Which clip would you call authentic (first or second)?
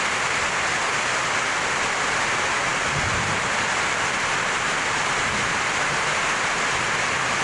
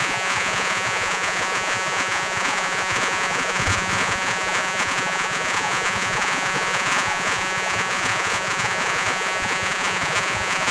first